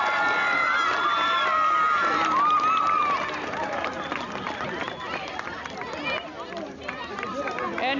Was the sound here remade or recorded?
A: recorded